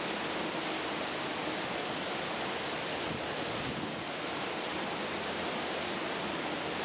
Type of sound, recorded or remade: recorded